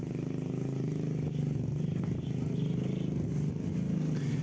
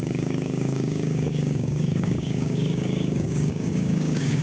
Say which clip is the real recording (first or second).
first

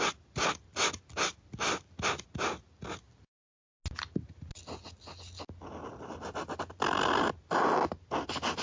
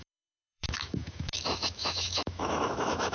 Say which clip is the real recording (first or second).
first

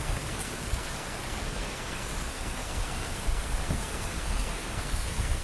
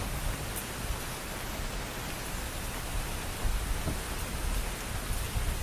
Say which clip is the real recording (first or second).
second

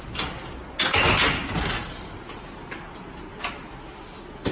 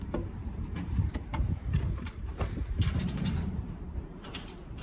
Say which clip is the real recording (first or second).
first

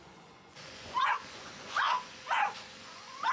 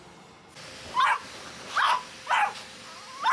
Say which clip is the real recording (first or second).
second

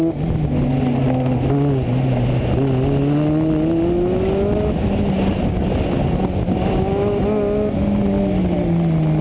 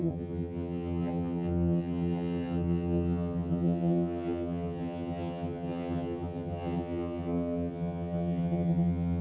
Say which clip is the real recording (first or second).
first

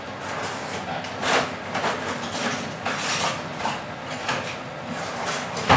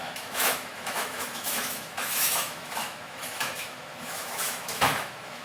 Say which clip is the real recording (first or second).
first